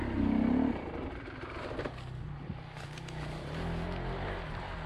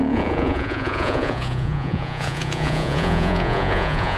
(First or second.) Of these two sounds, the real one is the first